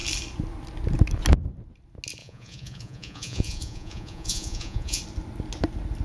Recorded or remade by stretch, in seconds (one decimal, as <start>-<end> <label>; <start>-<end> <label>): 0.0-2.2 recorded; 2.2-5.0 remade; 5.0-6.0 recorded

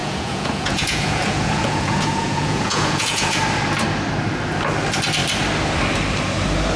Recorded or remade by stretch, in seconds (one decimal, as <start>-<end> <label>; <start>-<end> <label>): 0.0-3.4 remade; 3.4-6.8 recorded

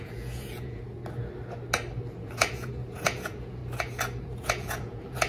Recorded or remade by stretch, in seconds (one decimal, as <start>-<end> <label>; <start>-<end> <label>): 0.0-1.0 remade; 1.0-2.1 recorded; 2.1-3.6 remade; 3.6-4.2 recorded; 4.2-5.3 remade

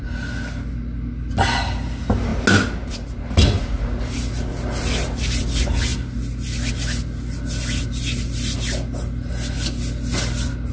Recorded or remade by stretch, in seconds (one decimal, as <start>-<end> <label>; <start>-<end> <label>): 0.0-10.7 recorded

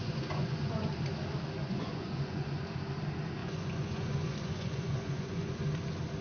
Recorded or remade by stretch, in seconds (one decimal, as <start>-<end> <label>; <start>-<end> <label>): 0.0-0.9 remade; 0.9-1.6 recorded; 1.6-2.6 remade; 2.6-3.4 recorded; 3.4-5.6 remade; 5.6-6.2 recorded